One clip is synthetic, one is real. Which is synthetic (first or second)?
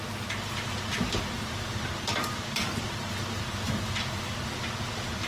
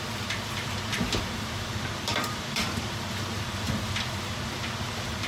second